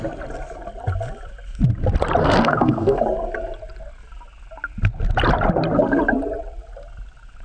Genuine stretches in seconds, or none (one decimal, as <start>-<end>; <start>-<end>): 0.0-2.2; 3.0-7.4